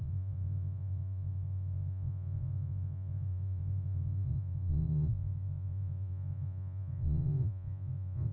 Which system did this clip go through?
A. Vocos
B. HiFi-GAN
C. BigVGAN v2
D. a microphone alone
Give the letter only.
A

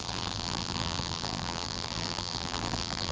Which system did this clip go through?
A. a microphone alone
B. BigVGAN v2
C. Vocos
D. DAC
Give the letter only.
B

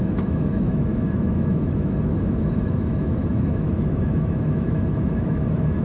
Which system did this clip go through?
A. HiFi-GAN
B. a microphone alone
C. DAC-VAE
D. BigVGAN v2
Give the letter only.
C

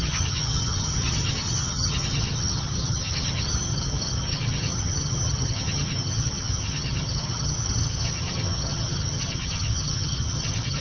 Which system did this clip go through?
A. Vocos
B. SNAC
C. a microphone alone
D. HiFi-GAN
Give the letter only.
D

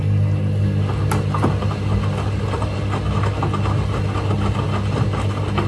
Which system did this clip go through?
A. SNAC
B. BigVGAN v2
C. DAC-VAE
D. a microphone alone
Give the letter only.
D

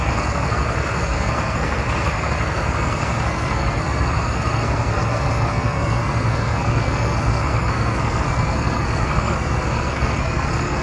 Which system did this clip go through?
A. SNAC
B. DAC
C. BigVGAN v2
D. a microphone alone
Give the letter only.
A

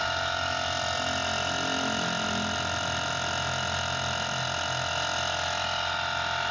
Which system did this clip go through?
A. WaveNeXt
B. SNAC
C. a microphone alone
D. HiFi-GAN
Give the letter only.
C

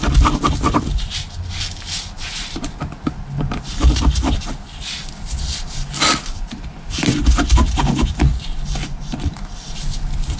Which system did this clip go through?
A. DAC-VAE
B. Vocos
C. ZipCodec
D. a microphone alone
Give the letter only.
D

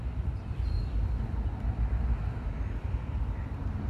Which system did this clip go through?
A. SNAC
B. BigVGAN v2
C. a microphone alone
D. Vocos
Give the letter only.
C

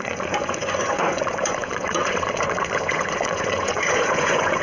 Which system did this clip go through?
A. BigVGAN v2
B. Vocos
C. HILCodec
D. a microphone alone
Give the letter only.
B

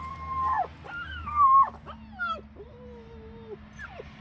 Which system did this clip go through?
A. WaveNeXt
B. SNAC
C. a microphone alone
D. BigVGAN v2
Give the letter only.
C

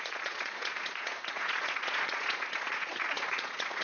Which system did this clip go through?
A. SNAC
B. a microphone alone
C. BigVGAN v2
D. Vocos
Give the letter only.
D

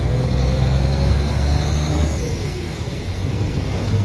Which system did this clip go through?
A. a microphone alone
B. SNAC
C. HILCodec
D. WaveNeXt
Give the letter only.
B